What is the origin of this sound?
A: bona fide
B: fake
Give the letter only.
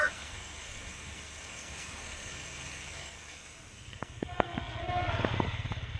B